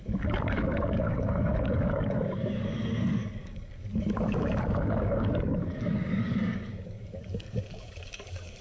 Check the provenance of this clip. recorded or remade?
remade